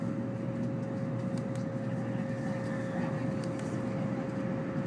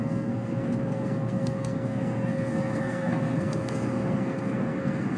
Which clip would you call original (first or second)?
first